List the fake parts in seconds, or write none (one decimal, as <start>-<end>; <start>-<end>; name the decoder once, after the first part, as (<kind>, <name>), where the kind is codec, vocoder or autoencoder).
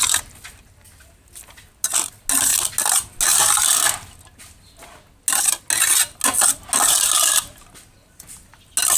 none